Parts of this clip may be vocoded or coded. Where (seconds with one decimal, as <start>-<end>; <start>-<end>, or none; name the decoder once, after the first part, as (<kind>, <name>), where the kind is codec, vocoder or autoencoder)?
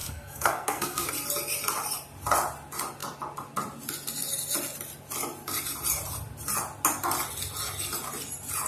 0.0-1.1 (codec, SNAC)